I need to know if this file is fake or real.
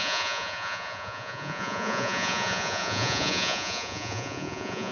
fake